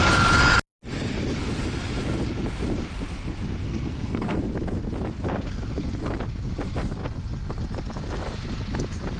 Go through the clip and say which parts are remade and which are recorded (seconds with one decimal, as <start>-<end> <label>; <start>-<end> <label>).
0.0-3.6 recorded; 3.6-4.4 remade; 4.4-9.2 recorded